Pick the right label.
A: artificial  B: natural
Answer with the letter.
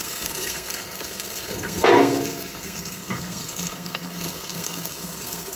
A